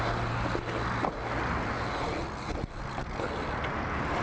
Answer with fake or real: real